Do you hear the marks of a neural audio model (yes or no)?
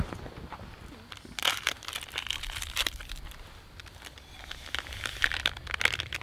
no